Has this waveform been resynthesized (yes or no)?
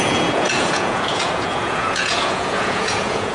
yes